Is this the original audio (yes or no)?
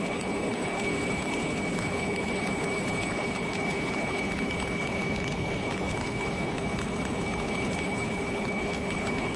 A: no